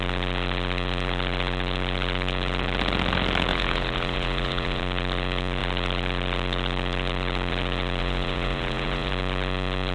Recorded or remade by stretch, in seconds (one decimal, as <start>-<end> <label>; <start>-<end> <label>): 0.0-3.5 recorded; 3.5-4.8 remade; 4.8-8.0 recorded; 8.0-9.1 remade; 9.1-9.9 recorded